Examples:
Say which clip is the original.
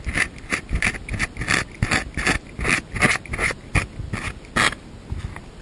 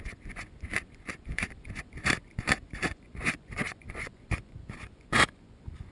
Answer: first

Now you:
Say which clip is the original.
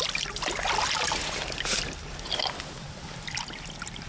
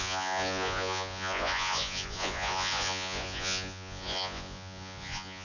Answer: first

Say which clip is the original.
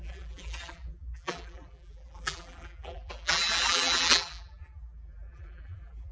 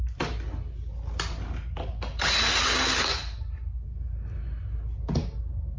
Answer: second